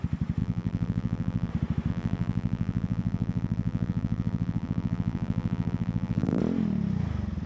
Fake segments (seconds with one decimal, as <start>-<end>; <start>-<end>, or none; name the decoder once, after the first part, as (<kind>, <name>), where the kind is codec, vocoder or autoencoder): 0.4-1.5 (vocoder, BigVGAN v2); 1.9-6.4